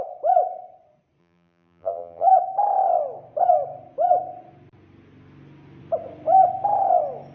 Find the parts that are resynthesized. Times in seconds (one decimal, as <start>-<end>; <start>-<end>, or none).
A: 1.2-2.3